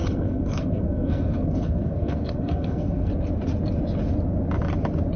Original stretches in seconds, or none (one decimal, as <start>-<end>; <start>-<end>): 3.1-5.2